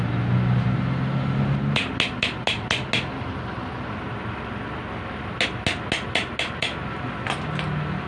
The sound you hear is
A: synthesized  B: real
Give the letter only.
B